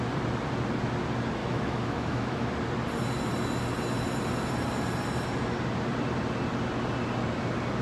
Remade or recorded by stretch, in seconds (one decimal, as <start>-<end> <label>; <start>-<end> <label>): 0.0-1.4 recorded; 1.4-2.5 remade; 2.5-7.8 recorded